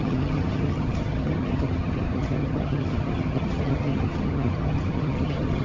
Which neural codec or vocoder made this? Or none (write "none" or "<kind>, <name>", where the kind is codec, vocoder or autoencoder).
vocoder, HiFi-GAN